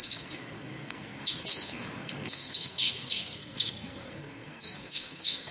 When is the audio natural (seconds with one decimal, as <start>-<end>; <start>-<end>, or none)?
none